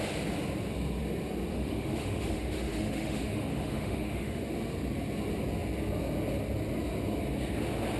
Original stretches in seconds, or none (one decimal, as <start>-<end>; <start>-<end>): 0.0-1.5; 4.4-8.0